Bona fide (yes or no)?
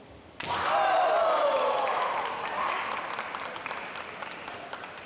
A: yes